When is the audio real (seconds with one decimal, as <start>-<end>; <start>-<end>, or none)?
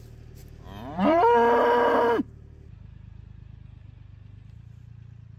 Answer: 0.0-0.4; 1.2-5.4